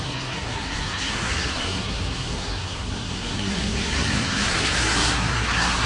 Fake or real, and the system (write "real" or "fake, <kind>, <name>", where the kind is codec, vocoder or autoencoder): fake, codec, SNAC